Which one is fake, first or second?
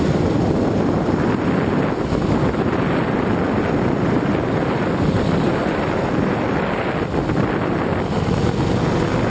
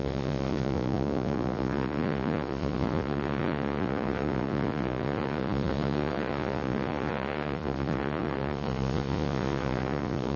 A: second